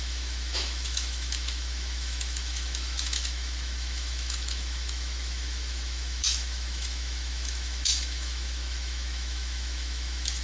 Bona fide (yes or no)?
no